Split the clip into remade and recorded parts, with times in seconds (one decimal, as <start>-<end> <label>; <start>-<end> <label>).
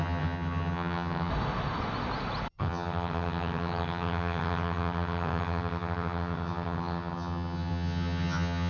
0.0-1.3 remade; 1.3-2.5 recorded; 2.5-8.7 remade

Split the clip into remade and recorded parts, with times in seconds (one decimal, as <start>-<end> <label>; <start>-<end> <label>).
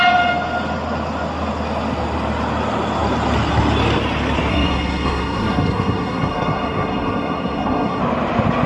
0.0-4.5 recorded; 4.5-8.0 remade; 8.0-8.7 recorded